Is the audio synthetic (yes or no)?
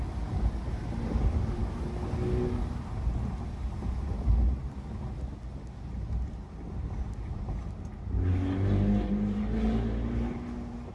no